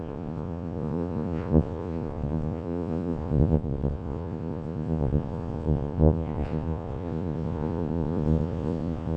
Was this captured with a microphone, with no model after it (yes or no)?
no